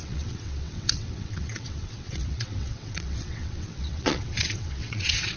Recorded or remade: remade